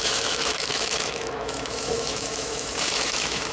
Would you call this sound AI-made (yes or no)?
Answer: yes